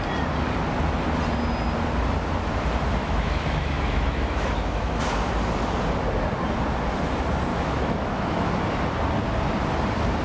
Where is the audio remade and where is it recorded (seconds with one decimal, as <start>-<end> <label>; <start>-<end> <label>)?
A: 0.0-3.0 recorded; 3.0-5.0 remade; 5.0-7.5 recorded; 7.5-8.5 remade; 8.5-10.2 recorded

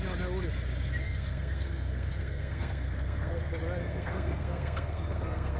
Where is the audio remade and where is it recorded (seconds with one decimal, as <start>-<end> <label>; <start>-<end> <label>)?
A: 0.0-1.0 recorded; 1.0-3.4 remade; 3.4-3.8 recorded; 3.8-5.6 remade

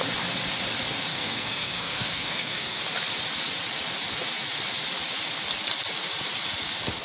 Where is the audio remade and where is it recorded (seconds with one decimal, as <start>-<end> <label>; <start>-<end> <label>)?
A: 0.0-1.1 recorded; 1.1-2.8 remade; 2.8-7.0 recorded

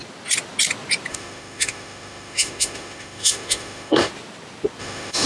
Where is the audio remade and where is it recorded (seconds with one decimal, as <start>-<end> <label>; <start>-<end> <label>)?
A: 0.0-1.1 recorded; 1.1-4.1 remade; 4.1-4.8 recorded; 4.8-5.3 remade

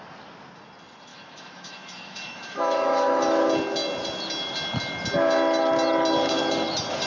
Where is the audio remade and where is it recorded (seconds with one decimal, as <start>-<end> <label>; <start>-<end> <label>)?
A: 0.0-1.1 recorded; 1.1-3.2 remade; 3.2-7.1 recorded